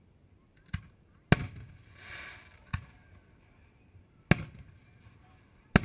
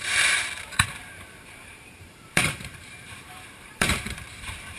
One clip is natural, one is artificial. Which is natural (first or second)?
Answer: first